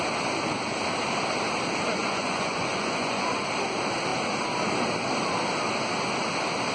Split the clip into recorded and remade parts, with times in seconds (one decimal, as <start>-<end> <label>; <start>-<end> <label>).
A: 0.0-2.0 recorded; 2.0-3.5 remade; 3.5-6.7 recorded